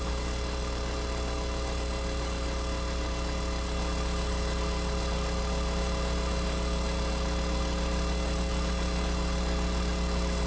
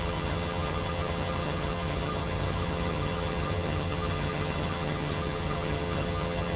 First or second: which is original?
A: first